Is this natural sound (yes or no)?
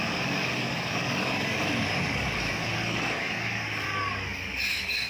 no